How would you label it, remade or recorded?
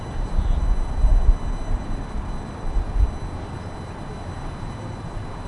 remade